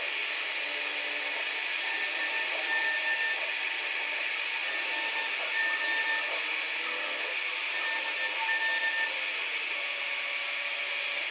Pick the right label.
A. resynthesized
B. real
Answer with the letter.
B